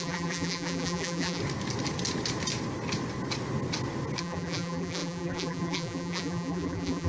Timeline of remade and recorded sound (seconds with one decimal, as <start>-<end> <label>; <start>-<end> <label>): 0.0-1.4 remade; 1.4-4.2 recorded; 4.2-7.1 remade